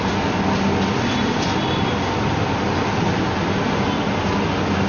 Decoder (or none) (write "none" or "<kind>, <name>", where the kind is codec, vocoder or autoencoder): none